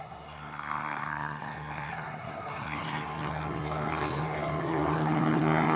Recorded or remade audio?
remade